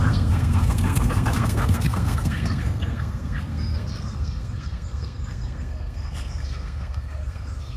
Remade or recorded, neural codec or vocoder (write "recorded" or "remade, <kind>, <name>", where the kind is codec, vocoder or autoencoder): remade, codec, SNAC